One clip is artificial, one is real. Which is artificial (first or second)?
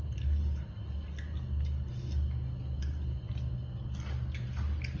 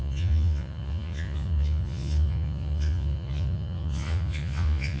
second